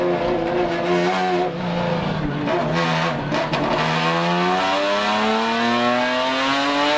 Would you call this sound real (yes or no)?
yes